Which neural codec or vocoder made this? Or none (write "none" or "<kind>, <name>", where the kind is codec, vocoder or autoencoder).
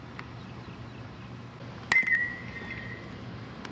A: none